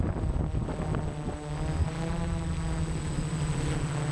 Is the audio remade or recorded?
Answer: recorded